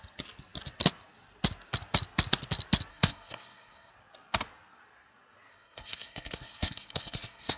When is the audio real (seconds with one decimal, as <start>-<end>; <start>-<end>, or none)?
0.0-2.9; 3.9-5.5